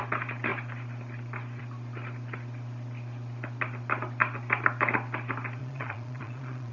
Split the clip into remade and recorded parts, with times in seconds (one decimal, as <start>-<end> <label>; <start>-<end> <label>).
0.0-5.6 recorded; 5.6-6.7 remade